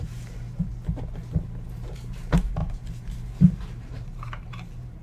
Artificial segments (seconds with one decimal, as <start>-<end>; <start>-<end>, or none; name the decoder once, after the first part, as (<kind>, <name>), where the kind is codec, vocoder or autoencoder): 0.0-0.7 (vocoder, BigVGAN v2); 1.9-2.6; 3.8-5.0